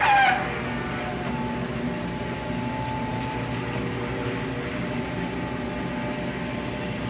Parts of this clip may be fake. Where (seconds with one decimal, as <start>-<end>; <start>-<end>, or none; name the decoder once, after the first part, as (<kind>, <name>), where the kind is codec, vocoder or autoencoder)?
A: none